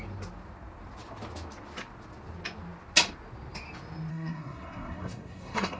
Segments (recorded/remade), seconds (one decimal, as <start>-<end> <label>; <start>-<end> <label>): 0.0-4.1 recorded; 4.1-5.8 remade